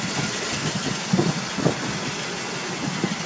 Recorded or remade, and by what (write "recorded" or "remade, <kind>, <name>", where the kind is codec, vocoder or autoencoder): recorded